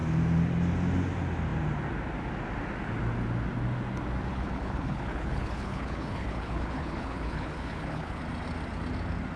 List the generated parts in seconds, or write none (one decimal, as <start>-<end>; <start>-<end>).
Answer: 4.3-8.2